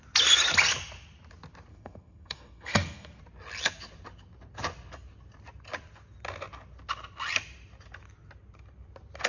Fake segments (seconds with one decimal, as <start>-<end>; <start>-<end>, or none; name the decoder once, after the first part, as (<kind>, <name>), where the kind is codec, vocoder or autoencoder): 1.7-3.2 (codec, SNAC)